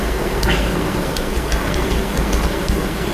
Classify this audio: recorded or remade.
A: remade